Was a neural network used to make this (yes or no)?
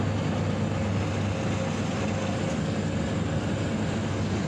no